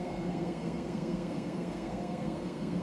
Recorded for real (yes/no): no